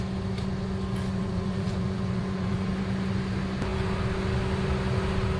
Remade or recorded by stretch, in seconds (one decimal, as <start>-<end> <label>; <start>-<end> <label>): 0.0-1.2 recorded; 1.2-2.7 remade; 2.7-5.4 recorded